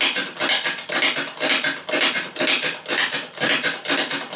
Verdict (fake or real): real